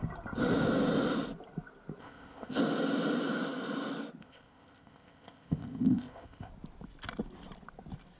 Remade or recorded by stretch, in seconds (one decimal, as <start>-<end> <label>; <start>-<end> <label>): 0.0-2.0 recorded; 2.0-2.6 remade; 2.6-4.2 recorded; 4.2-6.5 remade; 6.5-8.2 recorded